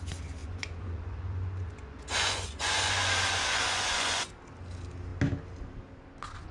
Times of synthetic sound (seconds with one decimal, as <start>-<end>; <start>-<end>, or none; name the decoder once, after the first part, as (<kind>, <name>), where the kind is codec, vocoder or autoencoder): 0.4-4.3 (vocoder, Vocos)